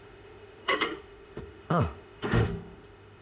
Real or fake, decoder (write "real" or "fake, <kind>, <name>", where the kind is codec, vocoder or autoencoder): fake, autoencoder, DAC-VAE